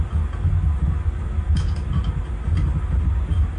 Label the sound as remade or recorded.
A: recorded